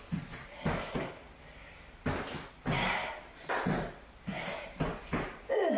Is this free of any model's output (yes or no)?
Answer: yes